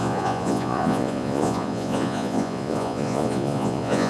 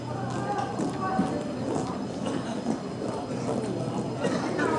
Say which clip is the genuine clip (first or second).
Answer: second